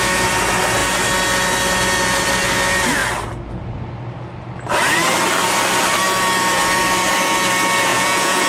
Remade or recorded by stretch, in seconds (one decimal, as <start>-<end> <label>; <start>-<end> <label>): 0.0-7.9 recorded; 7.9-8.5 remade